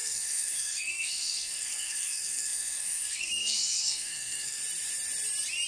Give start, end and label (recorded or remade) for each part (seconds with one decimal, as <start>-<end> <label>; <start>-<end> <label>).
0.0-4.6 remade; 4.6-5.7 recorded